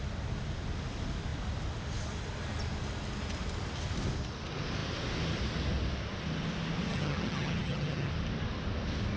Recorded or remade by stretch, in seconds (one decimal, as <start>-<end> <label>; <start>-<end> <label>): 0.0-6.9 recorded; 6.9-8.1 remade; 8.1-9.2 recorded